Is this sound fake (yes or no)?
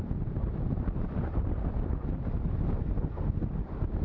no